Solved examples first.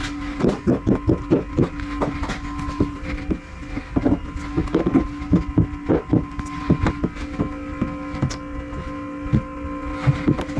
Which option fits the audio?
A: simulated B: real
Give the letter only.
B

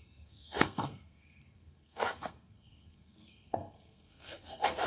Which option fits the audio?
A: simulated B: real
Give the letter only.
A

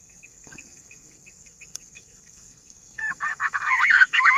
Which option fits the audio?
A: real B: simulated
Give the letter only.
B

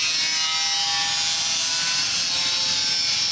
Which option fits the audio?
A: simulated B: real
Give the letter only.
B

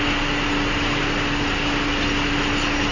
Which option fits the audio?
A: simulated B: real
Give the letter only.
B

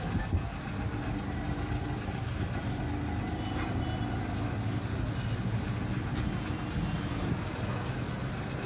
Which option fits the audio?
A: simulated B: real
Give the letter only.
B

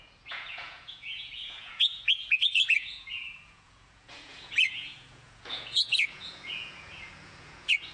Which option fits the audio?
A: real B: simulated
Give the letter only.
B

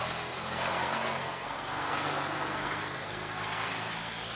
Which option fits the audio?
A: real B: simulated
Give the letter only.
B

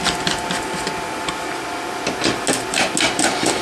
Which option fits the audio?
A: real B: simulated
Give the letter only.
A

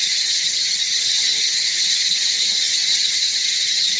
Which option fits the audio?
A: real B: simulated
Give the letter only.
B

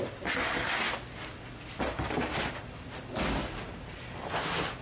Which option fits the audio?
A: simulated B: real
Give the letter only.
B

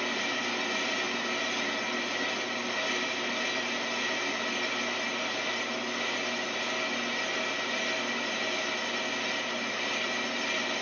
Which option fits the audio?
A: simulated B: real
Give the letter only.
B